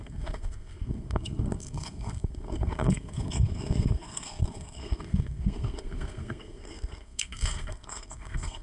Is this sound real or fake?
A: fake